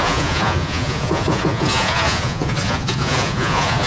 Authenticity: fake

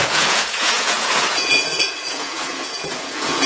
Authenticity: fake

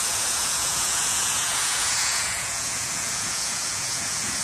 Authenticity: fake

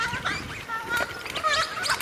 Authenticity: real